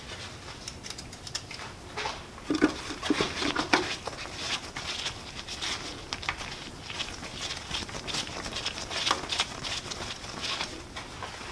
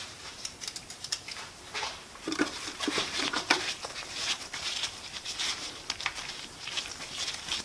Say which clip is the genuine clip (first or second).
first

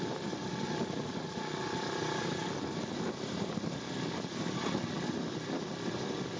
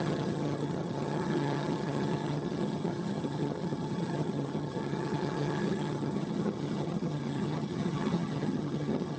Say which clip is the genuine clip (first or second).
first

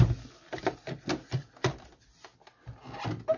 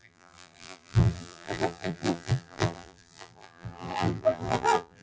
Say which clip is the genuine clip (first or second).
first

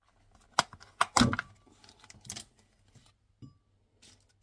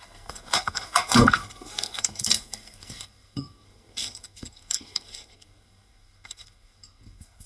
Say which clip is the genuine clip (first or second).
first